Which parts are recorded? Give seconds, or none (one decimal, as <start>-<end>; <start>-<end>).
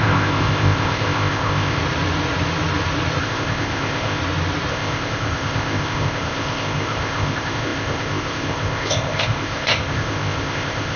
1.8-3.2; 4.2-4.7